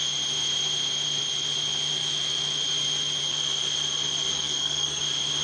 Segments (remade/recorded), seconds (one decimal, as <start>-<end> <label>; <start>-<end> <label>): 0.0-4.3 recorded; 4.3-5.0 remade; 5.0-5.4 recorded